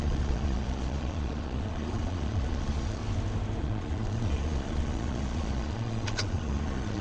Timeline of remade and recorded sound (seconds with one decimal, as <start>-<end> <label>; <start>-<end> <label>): 0.0-3.0 remade; 3.0-3.6 recorded; 3.6-7.0 remade